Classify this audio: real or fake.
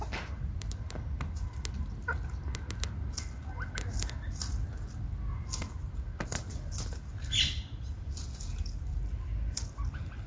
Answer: real